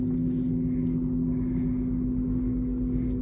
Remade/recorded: recorded